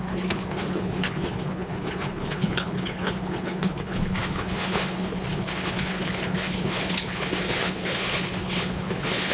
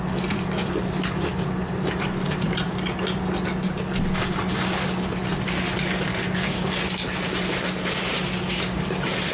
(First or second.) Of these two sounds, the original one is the second